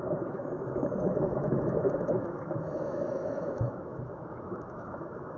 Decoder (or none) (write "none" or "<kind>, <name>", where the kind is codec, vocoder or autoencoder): autoencoder, DAC-VAE